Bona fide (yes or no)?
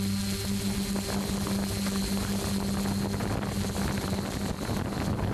yes